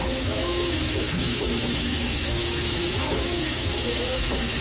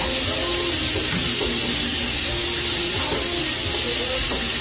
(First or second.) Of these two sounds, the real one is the second